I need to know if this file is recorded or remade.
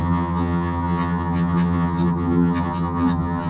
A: remade